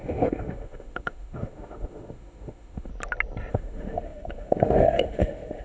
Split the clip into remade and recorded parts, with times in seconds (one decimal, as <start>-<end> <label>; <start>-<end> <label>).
0.0-2.9 remade; 2.9-3.5 recorded; 3.5-5.6 remade